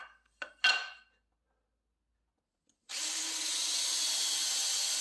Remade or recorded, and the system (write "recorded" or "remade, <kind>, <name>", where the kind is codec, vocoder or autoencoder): recorded